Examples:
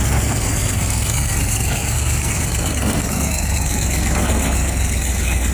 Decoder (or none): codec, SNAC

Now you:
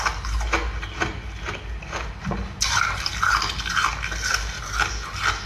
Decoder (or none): none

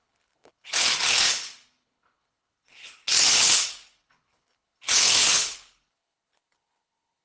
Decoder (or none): codec, HILCodec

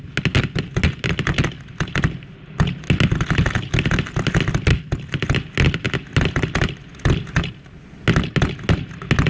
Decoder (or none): none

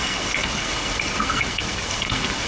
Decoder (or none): codec, SNAC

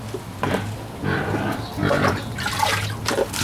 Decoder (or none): none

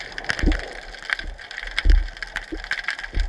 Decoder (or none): none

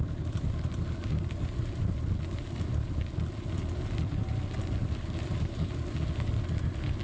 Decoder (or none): none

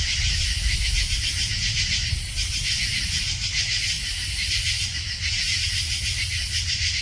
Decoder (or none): none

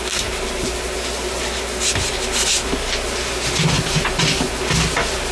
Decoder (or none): none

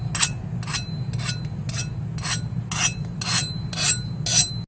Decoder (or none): none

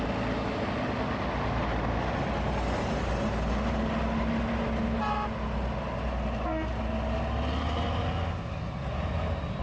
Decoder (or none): none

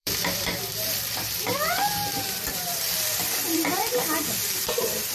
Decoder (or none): vocoder, BigVGAN v2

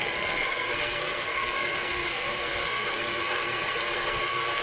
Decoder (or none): codec, SNAC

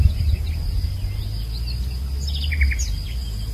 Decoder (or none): none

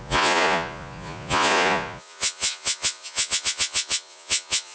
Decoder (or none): vocoder, Vocos